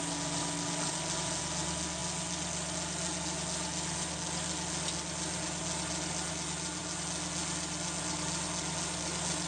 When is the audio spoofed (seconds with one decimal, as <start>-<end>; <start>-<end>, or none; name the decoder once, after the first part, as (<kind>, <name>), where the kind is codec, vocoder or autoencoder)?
none